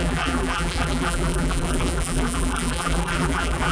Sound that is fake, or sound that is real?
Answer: fake